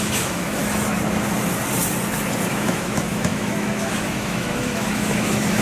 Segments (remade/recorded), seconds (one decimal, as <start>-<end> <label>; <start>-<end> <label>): 0.0-0.6 remade; 0.6-2.5 recorded; 2.5-5.6 remade